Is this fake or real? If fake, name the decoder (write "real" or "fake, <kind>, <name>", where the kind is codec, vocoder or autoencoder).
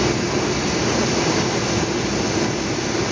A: real